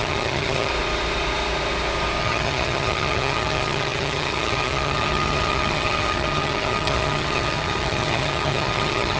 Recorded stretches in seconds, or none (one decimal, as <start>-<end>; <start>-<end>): 0.7-2.2